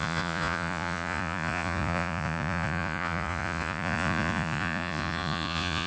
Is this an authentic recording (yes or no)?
no